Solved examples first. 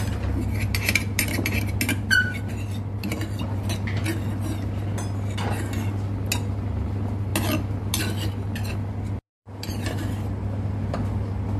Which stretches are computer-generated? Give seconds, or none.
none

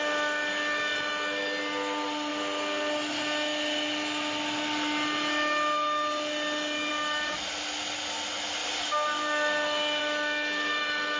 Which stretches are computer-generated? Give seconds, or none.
none

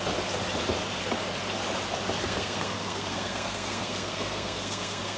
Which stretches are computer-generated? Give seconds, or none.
2.2-5.2 (codec, SNAC)

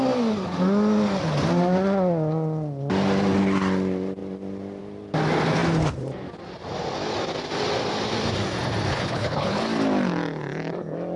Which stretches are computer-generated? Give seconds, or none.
8.9-9.6 (codec, HILCodec)

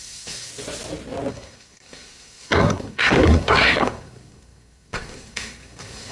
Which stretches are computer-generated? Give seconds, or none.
0.0-0.5 (codec, SNAC); 1.3-6.1

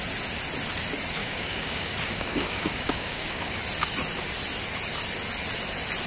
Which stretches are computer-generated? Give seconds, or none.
1.2-3.6 (codec, DAC)